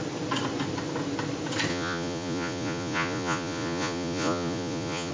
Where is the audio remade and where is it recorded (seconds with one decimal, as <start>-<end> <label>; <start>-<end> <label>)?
0.0-1.7 recorded; 1.7-5.1 remade